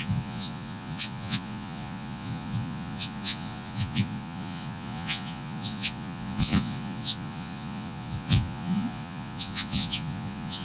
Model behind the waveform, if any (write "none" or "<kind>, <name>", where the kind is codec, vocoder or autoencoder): vocoder, Vocos